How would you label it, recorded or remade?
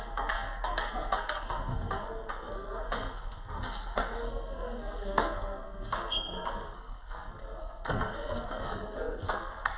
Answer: remade